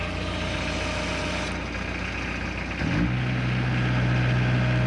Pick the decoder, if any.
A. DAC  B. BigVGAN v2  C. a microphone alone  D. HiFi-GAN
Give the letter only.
C